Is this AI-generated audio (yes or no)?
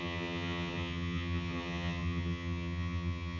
yes